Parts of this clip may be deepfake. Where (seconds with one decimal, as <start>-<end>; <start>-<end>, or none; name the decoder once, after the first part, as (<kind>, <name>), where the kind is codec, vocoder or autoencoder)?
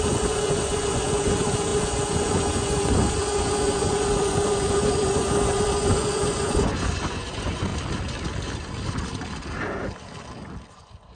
0.0-7.7 (vocoder, Vocos); 10.7-11.2